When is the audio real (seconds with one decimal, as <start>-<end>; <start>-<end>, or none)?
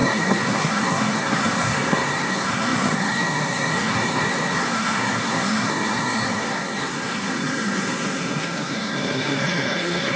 none